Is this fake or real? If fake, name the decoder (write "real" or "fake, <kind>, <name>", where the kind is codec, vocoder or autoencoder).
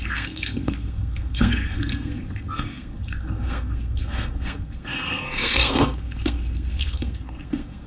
fake, codec, SNAC